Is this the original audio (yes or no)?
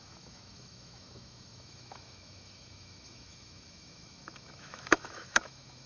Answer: no